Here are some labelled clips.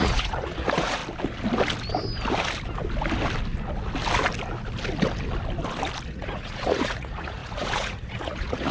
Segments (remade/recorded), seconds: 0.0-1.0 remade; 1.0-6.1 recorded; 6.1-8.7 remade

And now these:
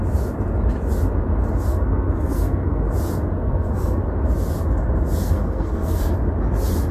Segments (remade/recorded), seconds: 0.0-1.7 recorded; 1.7-2.9 remade; 2.9-3.4 recorded; 3.4-4.0 remade; 4.0-5.2 recorded; 5.2-6.1 remade; 6.1-6.9 recorded

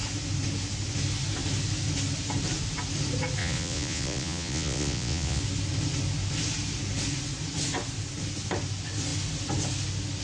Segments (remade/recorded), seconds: 0.0-3.4 recorded; 3.4-5.4 remade; 5.4-10.2 recorded

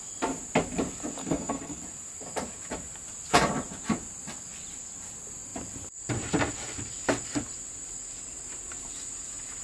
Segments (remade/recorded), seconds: 0.0-1.2 recorded; 1.2-1.8 remade; 1.8-9.6 recorded

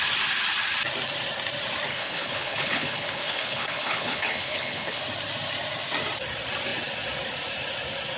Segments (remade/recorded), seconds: 0.0-1.9 recorded; 1.9-5.0 remade; 5.0-8.2 recorded

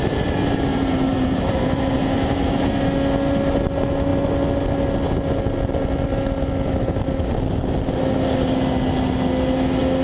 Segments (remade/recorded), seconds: 0.0-0.7 recorded; 0.7-2.8 remade; 2.8-10.0 recorded

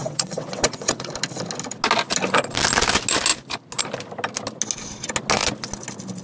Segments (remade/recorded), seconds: 0.0-1.1 remade; 1.1-6.2 recorded